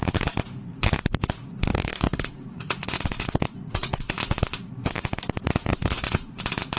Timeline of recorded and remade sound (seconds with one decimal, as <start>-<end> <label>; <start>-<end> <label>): 0.0-1.7 recorded; 1.7-4.1 remade; 4.1-5.7 recorded; 5.7-6.3 remade; 6.3-6.8 recorded

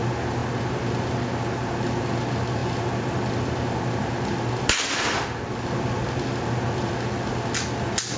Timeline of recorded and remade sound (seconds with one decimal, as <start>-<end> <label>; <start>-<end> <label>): 0.0-8.2 recorded

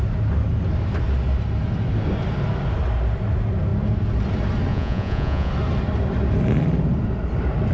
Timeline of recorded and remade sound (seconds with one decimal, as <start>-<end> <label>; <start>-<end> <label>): 0.0-4.7 recorded; 4.7-5.5 remade; 5.5-7.7 recorded

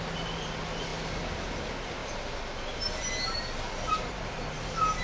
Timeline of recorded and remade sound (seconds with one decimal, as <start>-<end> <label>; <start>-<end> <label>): 0.0-5.0 recorded